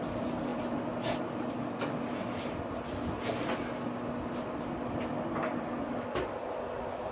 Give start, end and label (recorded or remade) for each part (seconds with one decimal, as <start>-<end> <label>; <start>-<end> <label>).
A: 0.0-7.1 recorded